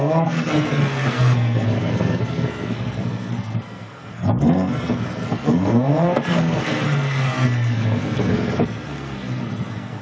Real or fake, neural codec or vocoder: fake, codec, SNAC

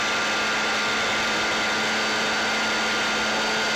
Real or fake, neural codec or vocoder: real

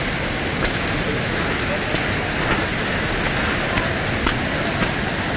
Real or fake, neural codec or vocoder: real